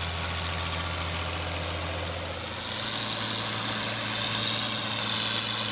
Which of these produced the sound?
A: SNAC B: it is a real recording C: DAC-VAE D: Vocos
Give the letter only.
B